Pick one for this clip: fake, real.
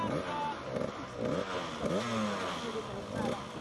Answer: real